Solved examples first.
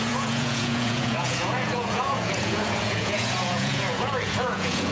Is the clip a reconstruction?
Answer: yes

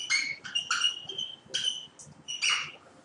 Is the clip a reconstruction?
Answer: no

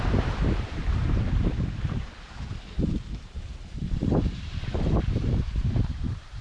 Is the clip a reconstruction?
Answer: yes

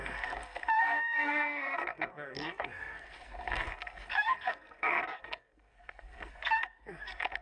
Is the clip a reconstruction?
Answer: yes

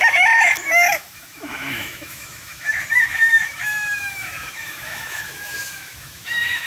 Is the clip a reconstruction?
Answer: yes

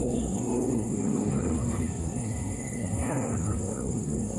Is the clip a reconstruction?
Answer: yes